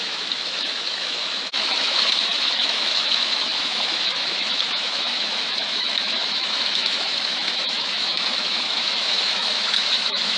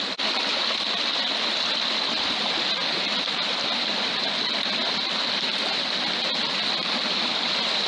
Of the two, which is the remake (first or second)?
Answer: first